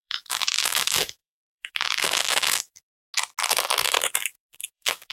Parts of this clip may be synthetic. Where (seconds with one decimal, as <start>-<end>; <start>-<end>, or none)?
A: 0.0-2.9; 4.0-5.1